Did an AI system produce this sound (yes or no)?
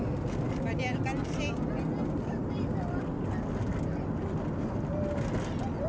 no